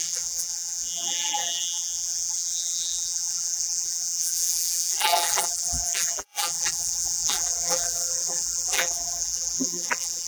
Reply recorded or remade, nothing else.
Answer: remade